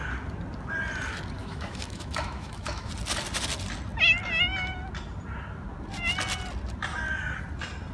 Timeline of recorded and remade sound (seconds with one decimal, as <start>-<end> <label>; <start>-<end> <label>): 0.0-1.4 recorded; 1.4-2.9 remade; 2.9-7.9 recorded